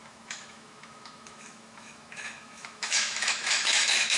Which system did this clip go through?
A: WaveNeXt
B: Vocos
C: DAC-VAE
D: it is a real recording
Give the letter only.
C